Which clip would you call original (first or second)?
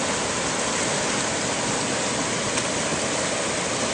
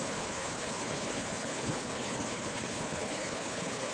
first